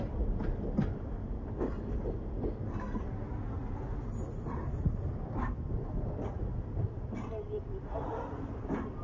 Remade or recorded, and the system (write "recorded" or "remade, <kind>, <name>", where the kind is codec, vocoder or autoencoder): recorded